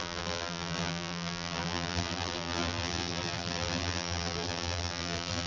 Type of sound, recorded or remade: remade